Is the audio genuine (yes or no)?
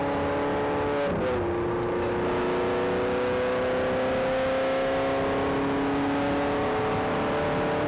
yes